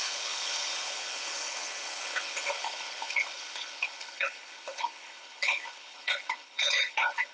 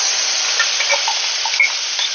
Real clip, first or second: second